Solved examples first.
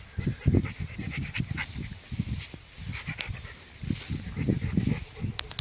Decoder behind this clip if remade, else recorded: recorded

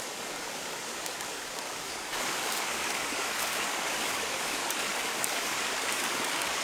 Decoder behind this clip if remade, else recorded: remade, codec, DAC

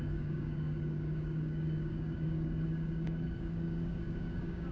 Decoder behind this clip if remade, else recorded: remade, codec, DAC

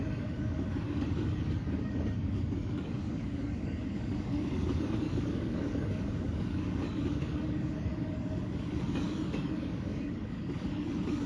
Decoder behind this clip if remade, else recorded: remade, codec, DAC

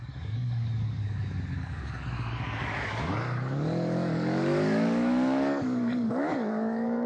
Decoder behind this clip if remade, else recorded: remade, codec, DAC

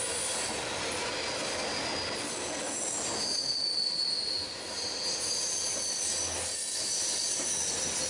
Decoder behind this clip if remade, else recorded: recorded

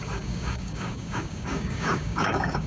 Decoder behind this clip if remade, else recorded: remade, codec, DAC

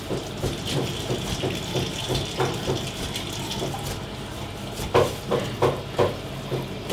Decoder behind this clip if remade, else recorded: recorded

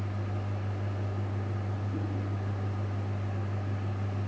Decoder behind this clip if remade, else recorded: recorded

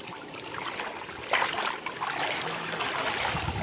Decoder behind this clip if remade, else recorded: recorded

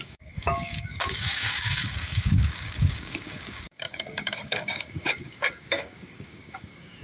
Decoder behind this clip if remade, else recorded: remade, codec, DAC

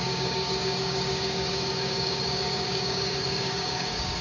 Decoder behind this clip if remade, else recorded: remade, codec, DAC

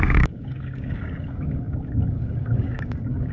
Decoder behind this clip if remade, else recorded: remade, codec, DAC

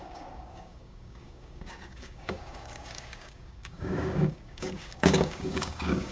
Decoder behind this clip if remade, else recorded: remade, codec, DAC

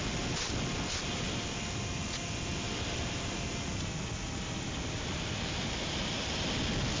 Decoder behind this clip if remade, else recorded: recorded